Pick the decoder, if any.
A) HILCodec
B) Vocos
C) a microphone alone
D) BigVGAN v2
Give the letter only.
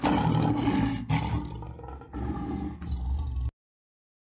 C